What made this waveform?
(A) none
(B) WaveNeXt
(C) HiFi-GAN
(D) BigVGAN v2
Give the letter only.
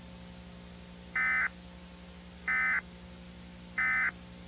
A